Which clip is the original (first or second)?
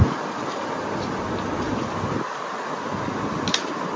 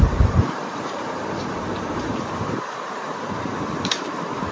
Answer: first